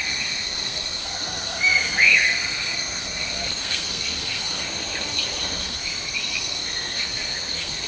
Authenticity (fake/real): fake